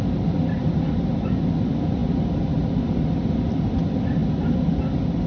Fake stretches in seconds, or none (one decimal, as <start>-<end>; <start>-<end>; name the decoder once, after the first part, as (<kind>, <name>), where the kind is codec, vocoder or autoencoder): none